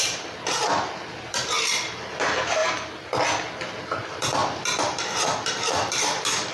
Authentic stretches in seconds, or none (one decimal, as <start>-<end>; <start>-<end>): 0.6-1.3; 2.6-4.0

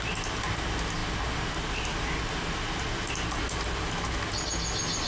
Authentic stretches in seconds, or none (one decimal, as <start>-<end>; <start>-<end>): 0.0-5.1

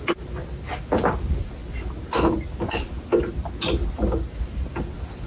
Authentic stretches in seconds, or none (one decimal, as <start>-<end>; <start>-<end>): 0.0-5.3

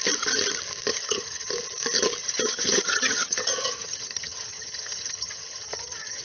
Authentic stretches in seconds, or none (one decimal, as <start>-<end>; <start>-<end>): 0.0-0.9; 1.5-2.2

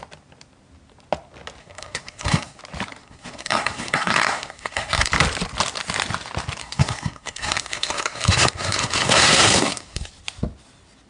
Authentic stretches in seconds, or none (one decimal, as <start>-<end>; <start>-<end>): 0.0-1.6; 2.6-3.0; 5.1-6.6; 10.1-11.1

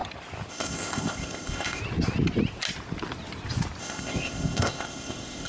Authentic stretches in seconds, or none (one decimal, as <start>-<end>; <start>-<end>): 0.0-0.5; 1.8-3.8